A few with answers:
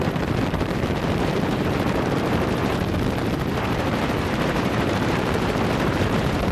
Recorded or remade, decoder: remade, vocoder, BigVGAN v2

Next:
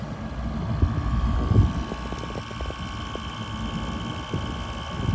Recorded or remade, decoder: recorded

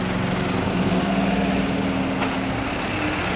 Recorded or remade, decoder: recorded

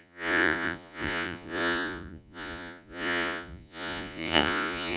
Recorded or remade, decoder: remade, vocoder, Vocos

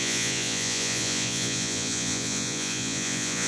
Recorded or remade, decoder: remade, vocoder, Vocos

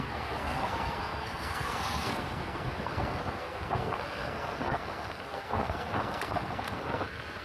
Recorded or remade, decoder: remade, codec, SNAC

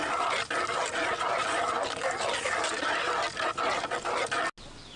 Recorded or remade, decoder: recorded